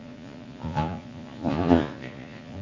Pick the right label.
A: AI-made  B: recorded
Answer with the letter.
A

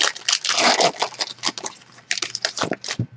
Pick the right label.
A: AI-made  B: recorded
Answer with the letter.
B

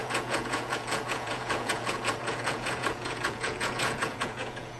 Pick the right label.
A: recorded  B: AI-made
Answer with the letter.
B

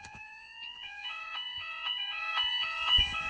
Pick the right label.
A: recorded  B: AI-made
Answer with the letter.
B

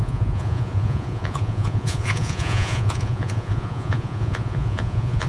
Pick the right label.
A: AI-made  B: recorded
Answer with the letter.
A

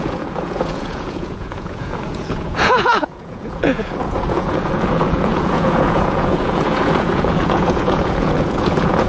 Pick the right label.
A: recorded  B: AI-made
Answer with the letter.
B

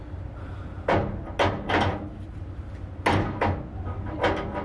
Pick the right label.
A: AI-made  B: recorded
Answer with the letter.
B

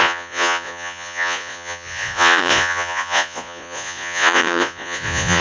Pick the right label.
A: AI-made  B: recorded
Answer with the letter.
A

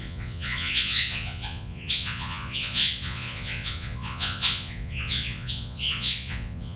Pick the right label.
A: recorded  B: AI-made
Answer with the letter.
B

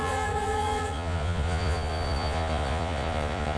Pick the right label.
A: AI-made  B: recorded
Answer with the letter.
A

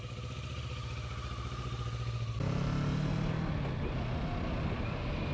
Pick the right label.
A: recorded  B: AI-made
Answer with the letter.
A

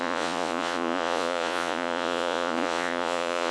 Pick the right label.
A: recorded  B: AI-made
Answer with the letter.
B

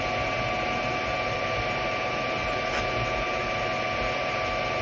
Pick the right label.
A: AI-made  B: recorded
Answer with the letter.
B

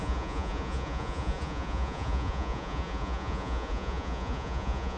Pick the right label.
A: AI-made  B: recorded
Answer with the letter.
A